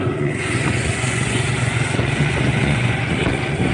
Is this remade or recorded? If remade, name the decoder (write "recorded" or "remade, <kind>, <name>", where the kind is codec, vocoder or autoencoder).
remade, vocoder, Vocos